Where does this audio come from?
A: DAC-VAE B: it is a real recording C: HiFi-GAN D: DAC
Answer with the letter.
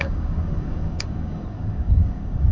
D